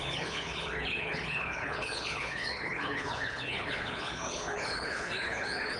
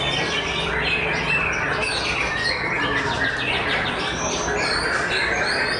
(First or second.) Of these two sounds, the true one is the second